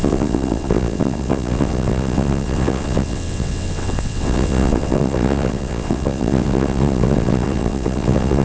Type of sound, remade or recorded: remade